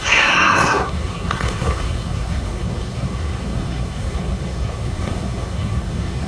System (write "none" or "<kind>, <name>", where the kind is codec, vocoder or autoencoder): codec, SNAC